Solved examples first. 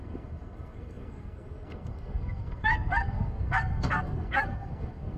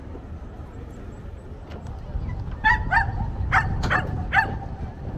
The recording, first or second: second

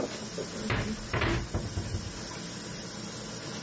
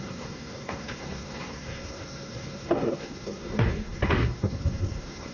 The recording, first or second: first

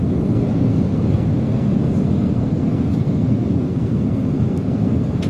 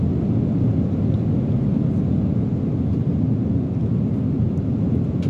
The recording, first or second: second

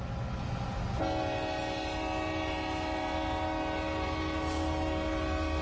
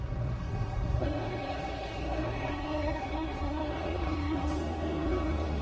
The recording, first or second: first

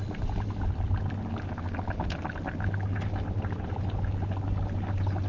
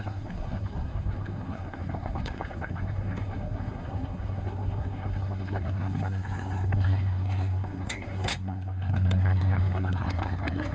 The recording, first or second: first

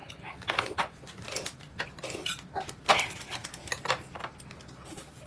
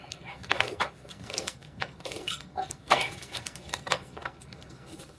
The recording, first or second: first